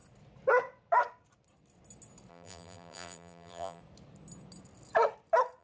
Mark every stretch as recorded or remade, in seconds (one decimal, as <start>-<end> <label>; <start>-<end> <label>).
0.0-2.3 recorded; 2.3-3.8 remade; 3.8-5.6 recorded